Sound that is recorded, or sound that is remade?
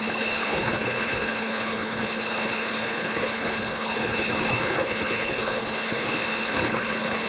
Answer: remade